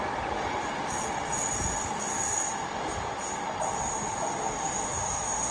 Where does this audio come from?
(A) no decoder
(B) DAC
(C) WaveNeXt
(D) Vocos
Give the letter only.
A